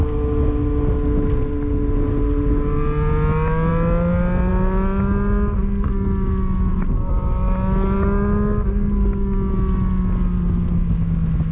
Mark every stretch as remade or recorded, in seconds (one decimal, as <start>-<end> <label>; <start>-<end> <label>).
0.0-11.5 recorded